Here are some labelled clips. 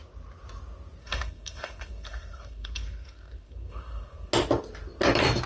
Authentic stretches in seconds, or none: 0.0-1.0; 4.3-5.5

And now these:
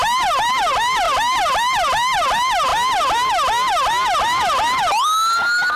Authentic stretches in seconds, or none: 0.0-5.8

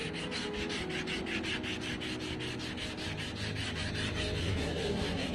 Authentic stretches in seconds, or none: 0.0-4.4

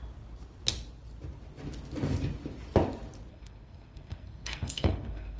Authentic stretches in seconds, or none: 0.0-3.3

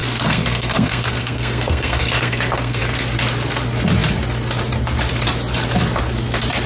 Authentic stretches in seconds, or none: 2.8-6.7

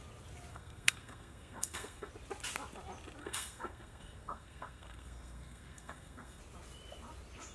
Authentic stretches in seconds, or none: 0.0-0.5; 2.1-3.2; 6.4-7.5